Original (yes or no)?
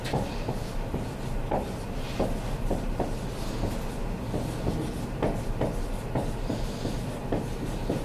yes